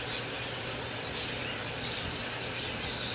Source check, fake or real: real